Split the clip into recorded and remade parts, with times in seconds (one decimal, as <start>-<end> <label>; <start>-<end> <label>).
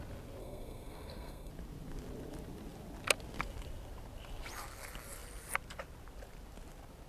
0.0-0.4 recorded; 0.4-1.5 remade; 1.5-7.1 recorded